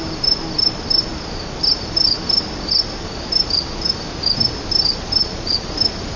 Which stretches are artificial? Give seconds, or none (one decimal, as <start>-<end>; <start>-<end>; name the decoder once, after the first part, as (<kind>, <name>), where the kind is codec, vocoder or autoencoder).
5.2-5.7 (vocoder, Vocos)